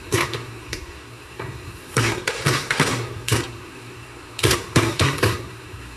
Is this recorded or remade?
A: remade